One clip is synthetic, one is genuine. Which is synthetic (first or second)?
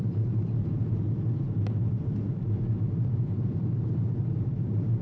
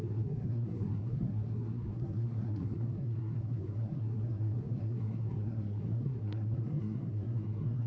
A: second